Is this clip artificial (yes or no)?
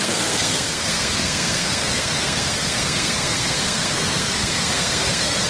yes